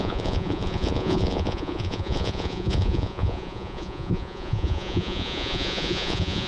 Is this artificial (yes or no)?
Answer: yes